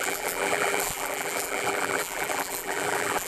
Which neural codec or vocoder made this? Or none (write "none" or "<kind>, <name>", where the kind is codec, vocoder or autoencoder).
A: vocoder, BigVGAN v2